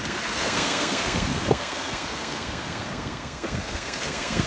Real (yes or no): no